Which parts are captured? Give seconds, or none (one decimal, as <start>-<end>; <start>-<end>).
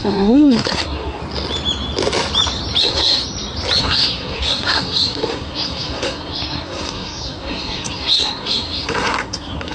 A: 1.2-2.8; 3.2-3.8